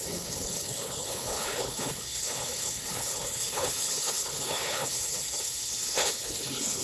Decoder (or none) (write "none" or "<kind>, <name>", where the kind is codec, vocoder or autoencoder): codec, HILCodec